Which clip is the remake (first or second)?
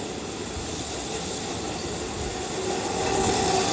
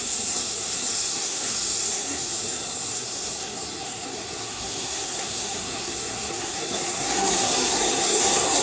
second